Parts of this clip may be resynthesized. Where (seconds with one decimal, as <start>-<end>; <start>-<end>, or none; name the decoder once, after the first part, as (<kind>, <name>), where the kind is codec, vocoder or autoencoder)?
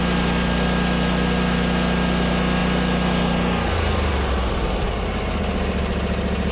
none